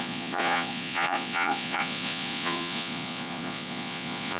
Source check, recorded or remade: remade